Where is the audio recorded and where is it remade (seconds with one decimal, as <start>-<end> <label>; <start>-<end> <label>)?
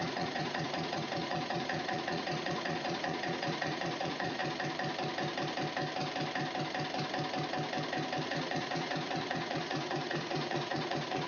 0.0-4.4 remade; 4.4-8.2 recorded; 8.2-11.3 remade